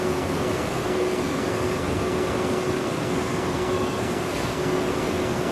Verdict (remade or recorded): remade